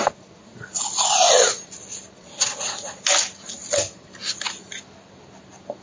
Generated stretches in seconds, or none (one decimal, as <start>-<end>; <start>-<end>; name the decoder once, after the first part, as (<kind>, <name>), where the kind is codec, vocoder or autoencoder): none